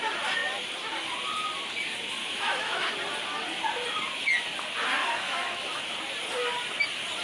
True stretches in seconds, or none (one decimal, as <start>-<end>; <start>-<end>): 0.0-2.2; 2.9-5.0; 5.9-7.2